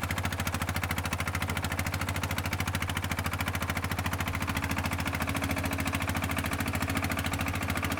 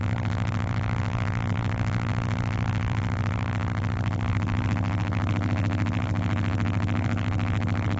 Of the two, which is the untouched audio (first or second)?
first